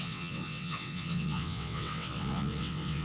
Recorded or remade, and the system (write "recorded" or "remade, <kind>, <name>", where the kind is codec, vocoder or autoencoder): remade, vocoder, WaveNeXt